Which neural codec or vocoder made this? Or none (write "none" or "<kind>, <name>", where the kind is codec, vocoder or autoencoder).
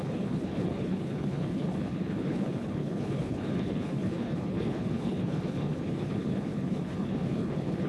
codec, HILCodec